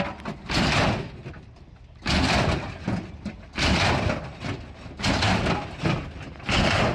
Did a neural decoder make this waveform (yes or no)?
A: no